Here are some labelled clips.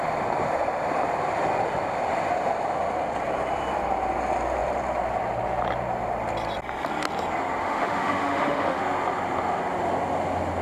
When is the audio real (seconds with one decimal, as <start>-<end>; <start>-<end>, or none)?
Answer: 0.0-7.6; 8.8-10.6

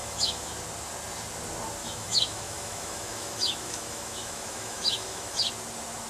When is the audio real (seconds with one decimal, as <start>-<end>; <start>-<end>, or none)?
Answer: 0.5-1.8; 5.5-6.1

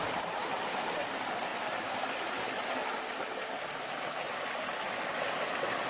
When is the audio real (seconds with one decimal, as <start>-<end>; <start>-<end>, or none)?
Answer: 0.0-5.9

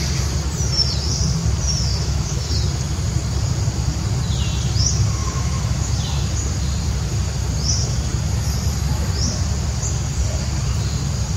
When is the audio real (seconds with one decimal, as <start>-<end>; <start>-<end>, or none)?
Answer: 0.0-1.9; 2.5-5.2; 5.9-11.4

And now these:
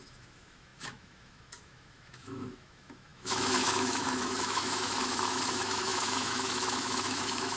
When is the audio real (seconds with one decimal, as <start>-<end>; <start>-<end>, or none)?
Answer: none

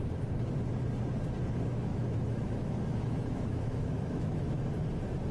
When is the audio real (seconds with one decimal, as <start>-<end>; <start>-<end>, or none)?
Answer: 0.0-1.9; 4.6-5.3

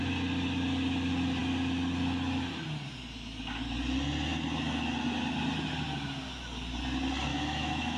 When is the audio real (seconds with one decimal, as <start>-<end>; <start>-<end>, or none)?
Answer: 0.0-7.3